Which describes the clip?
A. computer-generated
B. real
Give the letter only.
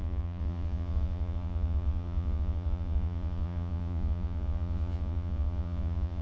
A